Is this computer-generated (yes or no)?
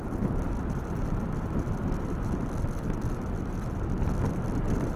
no